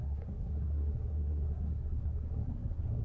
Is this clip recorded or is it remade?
remade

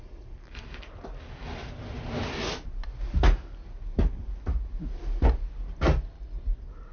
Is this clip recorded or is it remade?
recorded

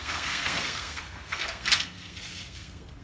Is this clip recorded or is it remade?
remade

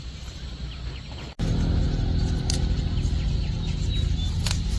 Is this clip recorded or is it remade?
recorded